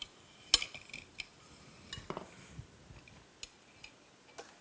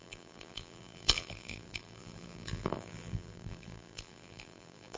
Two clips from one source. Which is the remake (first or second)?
second